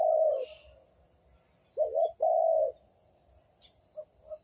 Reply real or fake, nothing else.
real